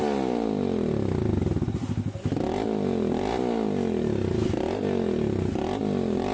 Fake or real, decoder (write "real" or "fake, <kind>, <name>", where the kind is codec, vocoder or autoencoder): real